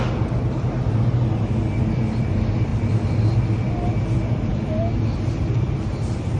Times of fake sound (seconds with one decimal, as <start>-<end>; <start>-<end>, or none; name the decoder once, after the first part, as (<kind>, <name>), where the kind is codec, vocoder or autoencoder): none